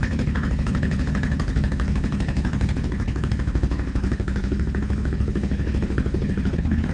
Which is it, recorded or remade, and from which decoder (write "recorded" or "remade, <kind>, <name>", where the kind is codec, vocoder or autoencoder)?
remade, codec, HILCodec